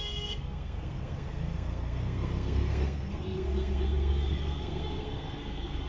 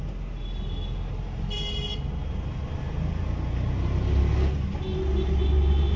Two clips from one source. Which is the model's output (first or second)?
first